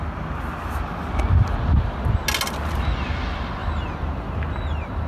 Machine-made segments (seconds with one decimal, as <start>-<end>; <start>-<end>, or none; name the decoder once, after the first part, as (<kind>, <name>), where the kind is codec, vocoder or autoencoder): none